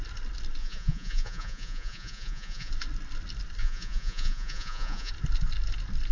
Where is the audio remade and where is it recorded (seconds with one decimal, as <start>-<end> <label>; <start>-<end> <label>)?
0.0-0.6 recorded; 0.6-2.7 remade; 2.7-3.6 recorded; 3.6-5.1 remade; 5.1-6.1 recorded